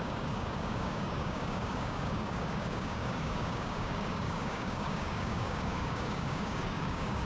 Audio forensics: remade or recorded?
remade